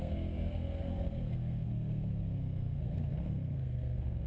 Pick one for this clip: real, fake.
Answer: fake